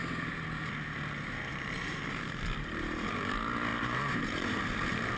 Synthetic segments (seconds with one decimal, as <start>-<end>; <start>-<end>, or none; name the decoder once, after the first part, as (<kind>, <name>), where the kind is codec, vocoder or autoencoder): 1.5-2.0 (vocoder, BigVGAN v2); 3.7-5.2